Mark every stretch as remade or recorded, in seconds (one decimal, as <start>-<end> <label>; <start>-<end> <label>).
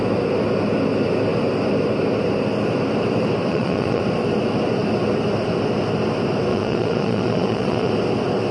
0.0-3.5 recorded; 3.5-4.0 remade; 4.0-6.5 recorded; 6.5-7.9 remade; 7.9-8.5 recorded